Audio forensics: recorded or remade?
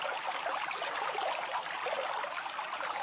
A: recorded